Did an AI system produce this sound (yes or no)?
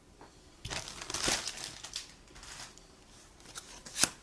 no